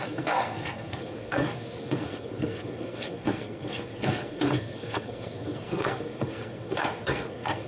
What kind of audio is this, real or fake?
fake